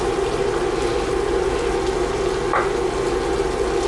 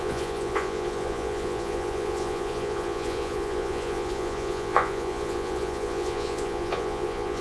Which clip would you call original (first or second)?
first